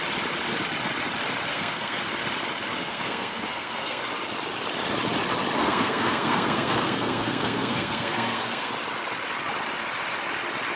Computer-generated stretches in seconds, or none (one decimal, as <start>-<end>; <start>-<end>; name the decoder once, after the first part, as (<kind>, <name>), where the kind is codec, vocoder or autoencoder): 1.5-2.0 (codec, SNAC); 2.8-4.0; 5.6-8.7